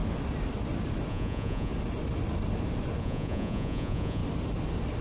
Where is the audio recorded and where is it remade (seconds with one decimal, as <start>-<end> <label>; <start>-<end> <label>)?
0.0-1.1 recorded; 1.1-1.7 remade; 1.7-3.0 recorded; 3.0-4.2 remade; 4.2-5.0 recorded